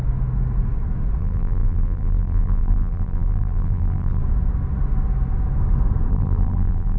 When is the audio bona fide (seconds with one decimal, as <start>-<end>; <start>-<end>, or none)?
0.0-1.2; 4.2-6.1